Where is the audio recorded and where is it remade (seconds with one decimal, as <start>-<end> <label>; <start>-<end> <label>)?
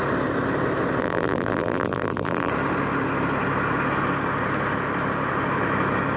0.0-1.0 recorded; 1.0-2.5 remade; 2.5-6.2 recorded